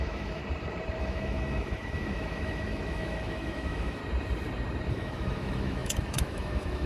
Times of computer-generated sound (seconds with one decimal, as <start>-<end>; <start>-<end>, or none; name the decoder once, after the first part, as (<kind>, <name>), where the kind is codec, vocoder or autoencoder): 0.0-0.4 (autoencoder, DAC-VAE); 1.0-4.0; 4.9-6.9